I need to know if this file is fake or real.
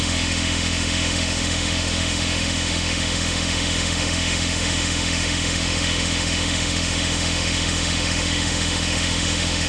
fake